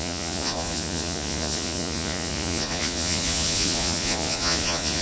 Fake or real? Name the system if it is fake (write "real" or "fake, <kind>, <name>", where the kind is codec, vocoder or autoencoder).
fake, vocoder, Vocos